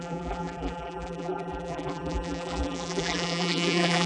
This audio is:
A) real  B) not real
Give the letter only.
B